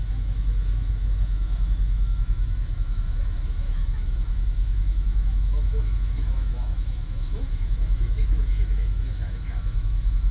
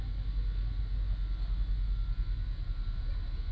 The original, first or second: second